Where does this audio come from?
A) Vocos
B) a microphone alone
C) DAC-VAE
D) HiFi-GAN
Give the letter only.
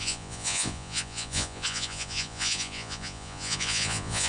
A